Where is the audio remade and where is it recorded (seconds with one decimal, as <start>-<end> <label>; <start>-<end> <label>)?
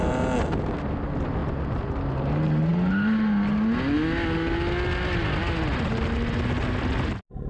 0.0-7.5 recorded